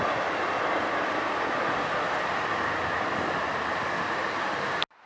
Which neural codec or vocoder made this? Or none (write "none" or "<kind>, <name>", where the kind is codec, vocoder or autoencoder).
none